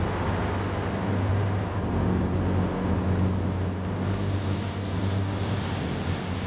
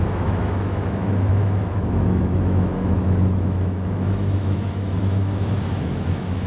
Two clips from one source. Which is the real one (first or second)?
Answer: first